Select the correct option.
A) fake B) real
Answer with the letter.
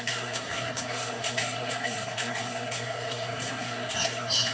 A